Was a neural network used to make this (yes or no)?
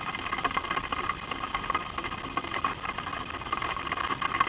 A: no